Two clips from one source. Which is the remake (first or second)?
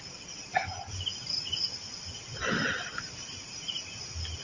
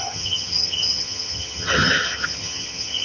second